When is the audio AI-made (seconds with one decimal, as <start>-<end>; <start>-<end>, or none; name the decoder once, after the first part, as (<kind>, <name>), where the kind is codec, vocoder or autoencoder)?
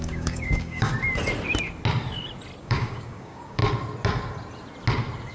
0.0-0.9 (codec, DAC); 2.6-3.6